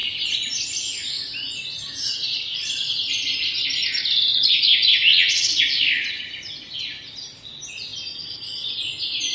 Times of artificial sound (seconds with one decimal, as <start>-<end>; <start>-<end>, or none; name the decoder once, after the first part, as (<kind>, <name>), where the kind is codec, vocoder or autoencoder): 5.1-5.6 (vocoder, WaveNeXt)